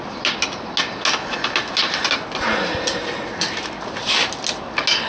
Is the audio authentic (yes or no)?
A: yes